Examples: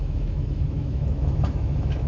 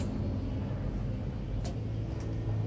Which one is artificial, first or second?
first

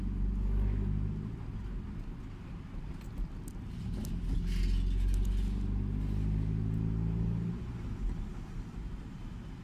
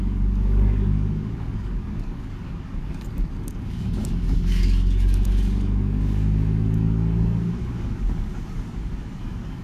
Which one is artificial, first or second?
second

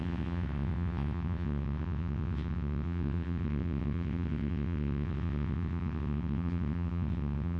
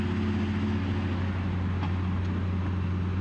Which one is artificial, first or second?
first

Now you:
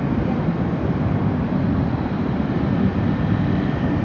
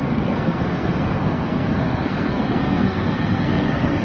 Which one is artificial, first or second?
second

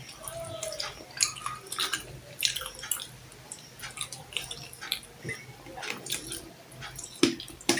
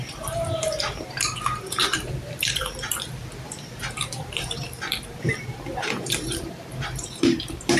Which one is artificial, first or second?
second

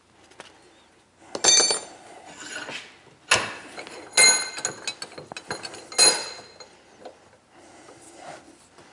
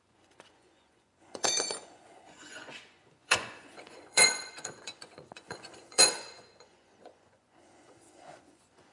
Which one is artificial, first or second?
second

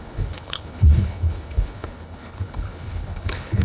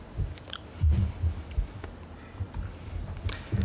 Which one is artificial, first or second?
first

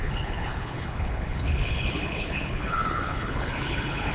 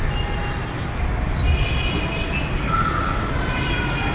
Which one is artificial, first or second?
first